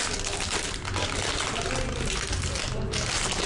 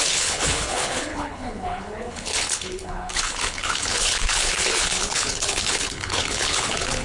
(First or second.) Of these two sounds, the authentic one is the first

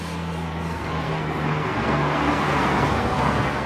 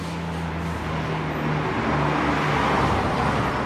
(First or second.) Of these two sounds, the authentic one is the second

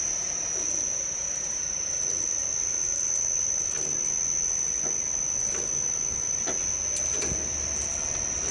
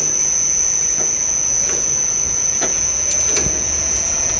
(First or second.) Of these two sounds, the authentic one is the first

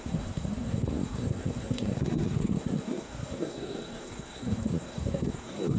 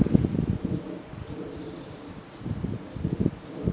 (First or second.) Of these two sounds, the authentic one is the second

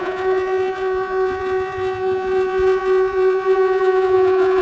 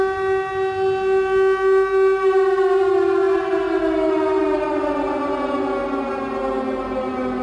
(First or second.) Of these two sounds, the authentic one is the second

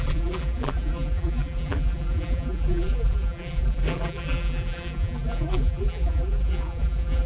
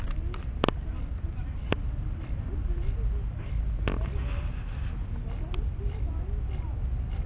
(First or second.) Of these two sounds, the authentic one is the second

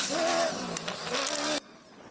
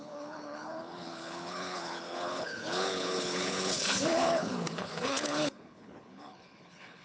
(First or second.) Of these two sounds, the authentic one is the first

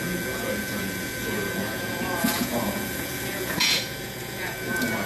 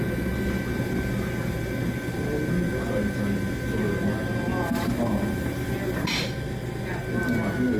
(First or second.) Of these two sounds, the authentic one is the second